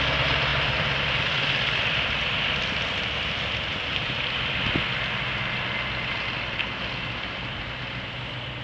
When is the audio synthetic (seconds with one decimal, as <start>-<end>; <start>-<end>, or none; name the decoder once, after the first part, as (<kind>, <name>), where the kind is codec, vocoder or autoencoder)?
0.5-4.8 (vocoder, BigVGAN v2)